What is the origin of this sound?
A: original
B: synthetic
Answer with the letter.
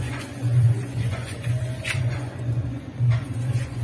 B